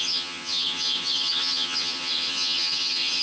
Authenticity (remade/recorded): remade